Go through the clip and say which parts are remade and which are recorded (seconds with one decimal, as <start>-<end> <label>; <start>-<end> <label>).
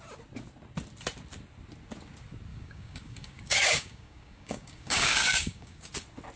0.0-2.5 recorded; 2.5-5.9 remade; 5.9-6.4 recorded